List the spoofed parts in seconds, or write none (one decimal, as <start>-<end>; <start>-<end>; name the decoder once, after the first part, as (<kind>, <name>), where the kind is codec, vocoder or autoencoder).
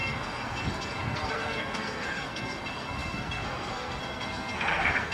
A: 0.0-5.1 (codec, SNAC)